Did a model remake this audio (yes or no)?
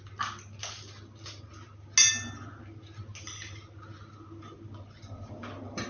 no